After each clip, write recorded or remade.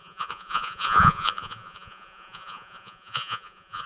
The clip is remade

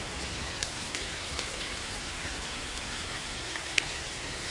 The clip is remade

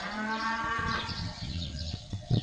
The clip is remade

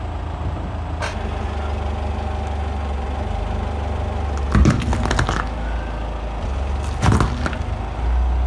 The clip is recorded